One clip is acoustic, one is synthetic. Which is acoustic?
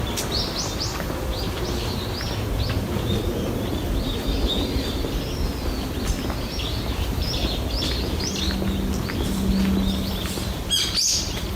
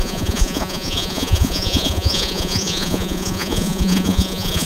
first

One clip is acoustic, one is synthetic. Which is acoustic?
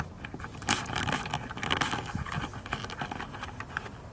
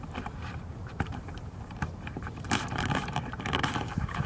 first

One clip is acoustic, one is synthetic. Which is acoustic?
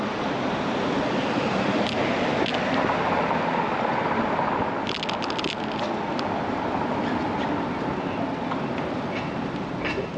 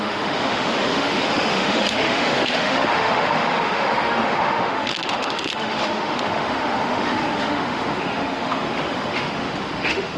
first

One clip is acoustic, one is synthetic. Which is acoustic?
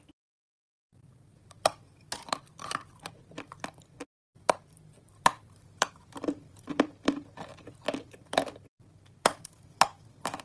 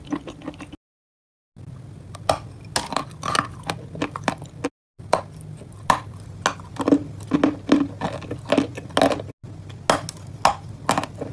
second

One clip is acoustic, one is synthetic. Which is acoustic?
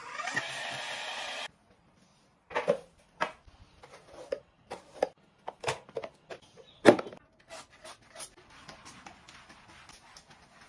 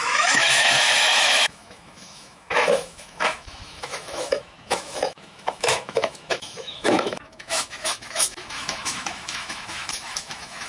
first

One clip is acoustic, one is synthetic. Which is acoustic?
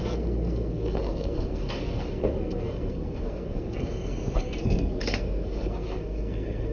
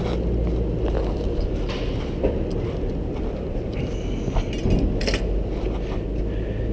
second